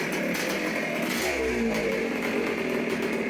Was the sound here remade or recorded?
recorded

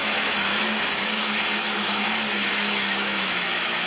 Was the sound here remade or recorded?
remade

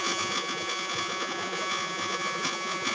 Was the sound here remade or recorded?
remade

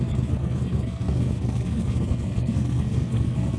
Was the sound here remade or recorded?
remade